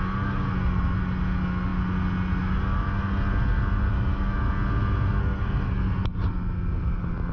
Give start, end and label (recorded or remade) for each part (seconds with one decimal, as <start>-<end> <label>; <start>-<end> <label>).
0.0-5.2 recorded; 5.2-5.7 remade; 5.7-7.3 recorded